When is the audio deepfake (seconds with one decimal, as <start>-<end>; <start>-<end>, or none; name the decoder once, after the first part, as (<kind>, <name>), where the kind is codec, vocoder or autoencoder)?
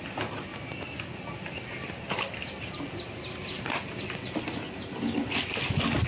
none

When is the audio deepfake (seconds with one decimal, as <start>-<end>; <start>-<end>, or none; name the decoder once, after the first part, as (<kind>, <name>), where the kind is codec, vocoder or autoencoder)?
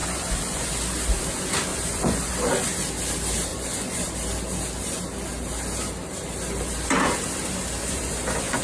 0.0-0.7 (vocoder, Vocos); 1.7-2.5; 3.5-4.1; 7.8-8.6